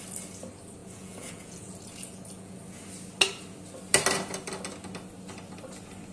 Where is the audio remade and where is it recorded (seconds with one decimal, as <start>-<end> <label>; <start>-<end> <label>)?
0.0-0.8 recorded; 0.8-2.5 remade; 2.5-6.1 recorded